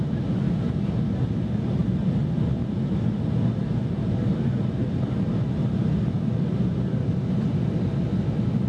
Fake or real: real